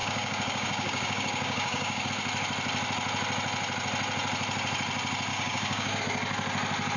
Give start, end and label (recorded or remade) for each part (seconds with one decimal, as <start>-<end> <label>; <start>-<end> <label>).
0.0-2.1 remade; 2.1-5.3 recorded; 5.3-6.0 remade; 6.0-7.0 recorded